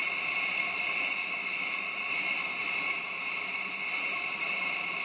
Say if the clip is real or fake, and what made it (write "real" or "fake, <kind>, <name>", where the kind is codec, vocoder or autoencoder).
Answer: fake, vocoder, BigVGAN v2